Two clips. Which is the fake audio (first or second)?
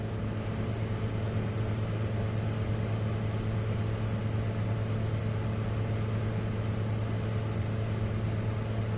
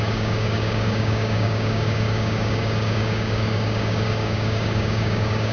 second